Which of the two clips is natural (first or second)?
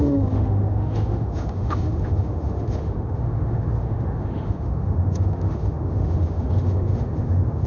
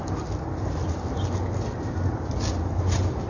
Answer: second